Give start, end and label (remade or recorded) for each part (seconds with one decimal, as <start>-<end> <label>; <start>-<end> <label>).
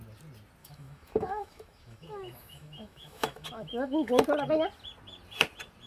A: 0.0-0.6 recorded; 0.6-4.1 remade; 4.1-5.9 recorded